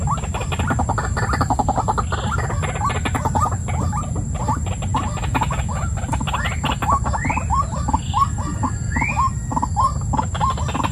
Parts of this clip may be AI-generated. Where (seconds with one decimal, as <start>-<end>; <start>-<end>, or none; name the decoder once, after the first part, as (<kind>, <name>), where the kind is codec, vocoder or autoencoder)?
none